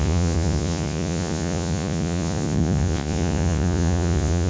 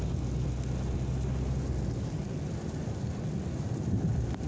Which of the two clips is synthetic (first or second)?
first